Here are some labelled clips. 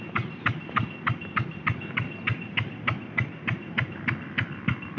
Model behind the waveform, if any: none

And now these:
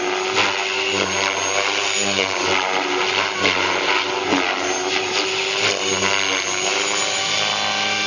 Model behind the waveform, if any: none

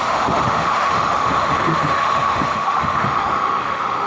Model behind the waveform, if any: autoencoder, DAC-VAE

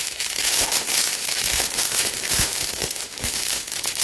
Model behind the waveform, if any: autoencoder, DAC-VAE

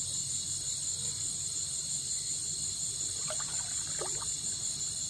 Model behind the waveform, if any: none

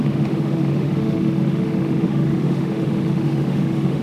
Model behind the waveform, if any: autoencoder, DAC-VAE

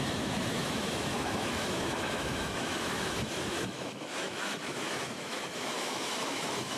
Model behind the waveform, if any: autoencoder, DAC-VAE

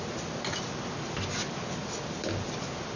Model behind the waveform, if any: none